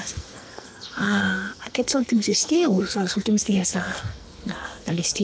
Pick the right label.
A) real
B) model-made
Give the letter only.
B